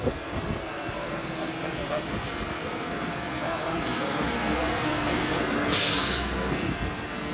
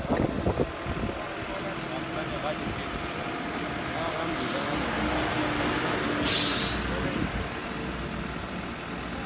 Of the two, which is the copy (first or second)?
first